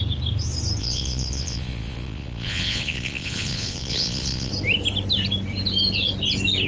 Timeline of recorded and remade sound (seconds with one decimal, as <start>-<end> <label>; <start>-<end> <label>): 0.0-0.8 recorded; 0.8-4.5 remade; 4.5-6.7 recorded